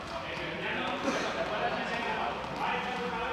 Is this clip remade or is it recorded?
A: remade